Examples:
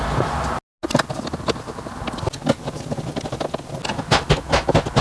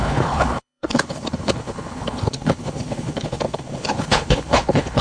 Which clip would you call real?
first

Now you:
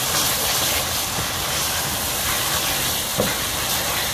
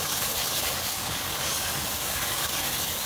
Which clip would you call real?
first